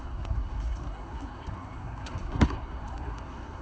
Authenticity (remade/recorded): remade